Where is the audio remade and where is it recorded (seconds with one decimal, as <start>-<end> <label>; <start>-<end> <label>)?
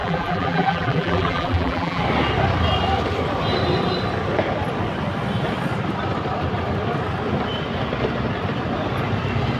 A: 0.0-2.0 remade; 2.0-9.6 recorded